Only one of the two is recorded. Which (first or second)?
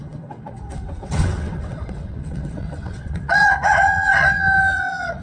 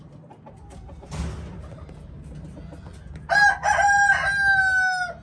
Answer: second